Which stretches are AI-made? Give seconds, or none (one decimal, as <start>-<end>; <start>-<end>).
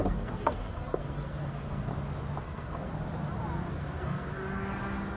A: 0.0-1.9; 2.4-2.9; 3.7-4.4